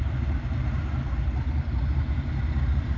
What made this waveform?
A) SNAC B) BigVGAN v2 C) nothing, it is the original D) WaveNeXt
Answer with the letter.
C